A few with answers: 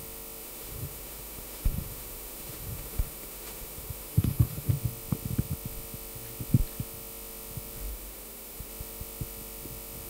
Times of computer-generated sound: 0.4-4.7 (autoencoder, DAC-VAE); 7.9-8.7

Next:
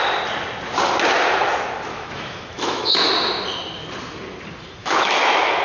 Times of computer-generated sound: 1.9-3.1 (autoencoder, DAC-VAE); 4.8-5.6